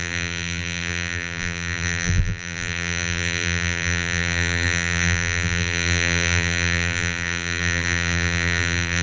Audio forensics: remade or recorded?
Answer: remade